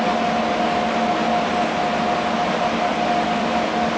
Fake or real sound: real